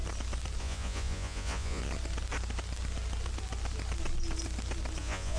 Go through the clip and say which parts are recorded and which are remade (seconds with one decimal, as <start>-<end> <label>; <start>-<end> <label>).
0.0-0.6 recorded; 0.6-1.8 remade; 1.8-5.0 recorded; 5.0-5.4 remade